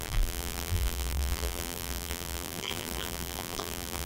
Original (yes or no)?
no